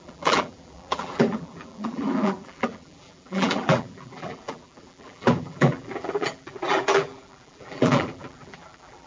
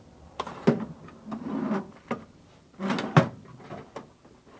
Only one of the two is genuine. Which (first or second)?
second